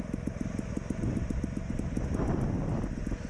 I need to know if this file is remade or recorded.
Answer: recorded